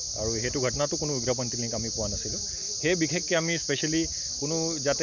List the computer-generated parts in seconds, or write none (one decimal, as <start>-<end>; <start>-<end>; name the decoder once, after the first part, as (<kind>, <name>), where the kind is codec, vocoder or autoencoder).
3.2-3.8 (autoencoder, DAC-VAE)